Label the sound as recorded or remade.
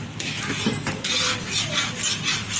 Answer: recorded